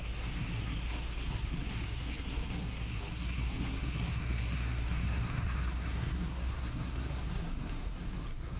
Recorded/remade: remade